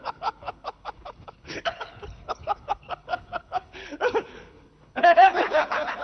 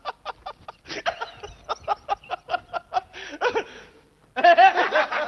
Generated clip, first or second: first